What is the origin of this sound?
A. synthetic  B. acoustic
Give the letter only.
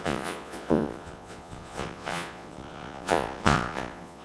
A